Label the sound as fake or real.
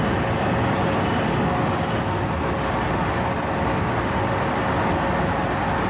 real